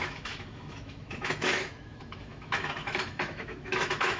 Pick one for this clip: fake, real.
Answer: fake